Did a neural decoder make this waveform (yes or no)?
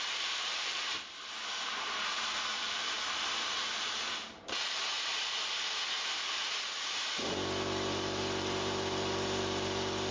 yes